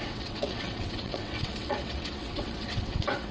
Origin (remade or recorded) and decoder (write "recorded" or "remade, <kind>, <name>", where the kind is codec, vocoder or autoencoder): remade, vocoder, WaveNeXt